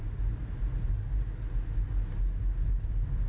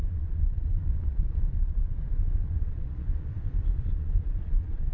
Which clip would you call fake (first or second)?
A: second